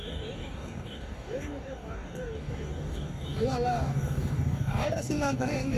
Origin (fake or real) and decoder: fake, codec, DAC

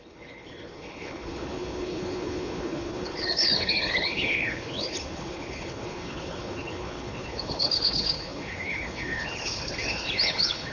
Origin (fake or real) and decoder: fake, codec, HILCodec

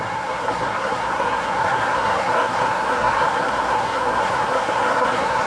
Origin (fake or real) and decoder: fake, codec, SNAC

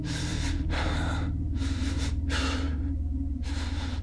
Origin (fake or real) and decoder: fake, vocoder, BigVGAN v2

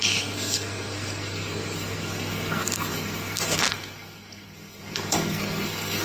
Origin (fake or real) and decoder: fake, codec, SNAC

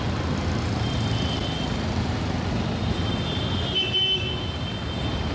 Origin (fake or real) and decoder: real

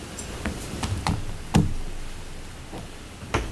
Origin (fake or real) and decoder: real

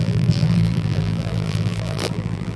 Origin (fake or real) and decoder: fake, vocoder, BigVGAN v2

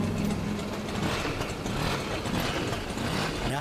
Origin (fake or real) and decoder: real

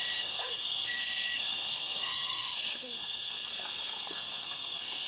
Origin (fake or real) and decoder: fake, codec, SNAC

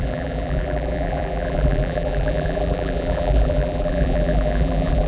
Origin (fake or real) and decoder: fake, vocoder, BigVGAN v2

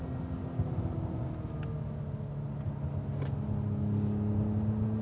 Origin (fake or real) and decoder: real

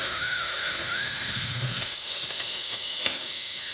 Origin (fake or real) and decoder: fake, autoencoder, DAC-VAE